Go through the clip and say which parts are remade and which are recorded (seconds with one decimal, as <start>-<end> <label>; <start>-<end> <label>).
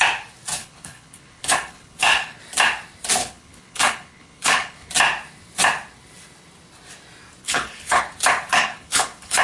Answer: 0.0-0.6 recorded; 0.6-2.4 remade; 2.4-3.2 recorded; 3.2-4.9 remade; 4.9-7.4 recorded; 7.4-8.0 remade; 8.0-8.5 recorded; 8.5-9.4 remade